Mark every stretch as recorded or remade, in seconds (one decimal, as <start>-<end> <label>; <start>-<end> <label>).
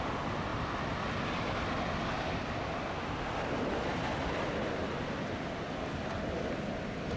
0.0-7.2 recorded